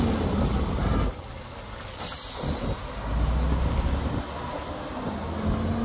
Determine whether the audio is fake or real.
real